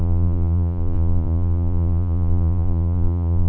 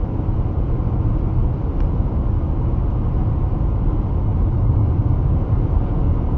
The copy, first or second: first